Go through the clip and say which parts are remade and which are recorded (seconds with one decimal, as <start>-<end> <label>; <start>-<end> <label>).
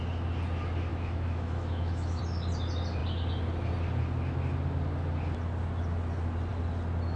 0.0-0.9 recorded; 0.9-2.2 remade; 2.2-7.2 recorded